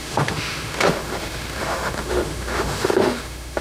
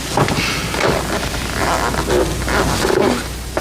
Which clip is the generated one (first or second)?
first